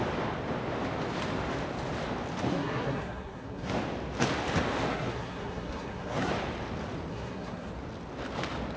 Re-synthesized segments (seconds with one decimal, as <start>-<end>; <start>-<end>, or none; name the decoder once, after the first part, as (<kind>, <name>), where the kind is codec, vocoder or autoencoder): 2.5-3.7 (codec, SNAC); 4.9-6.3; 7.1-7.7